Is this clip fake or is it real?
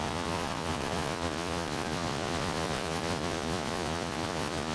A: fake